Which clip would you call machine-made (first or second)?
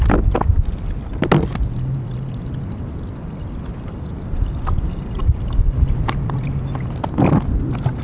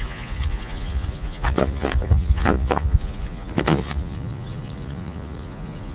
second